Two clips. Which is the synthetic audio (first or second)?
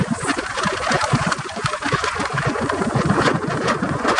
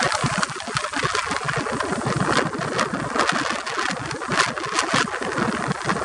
first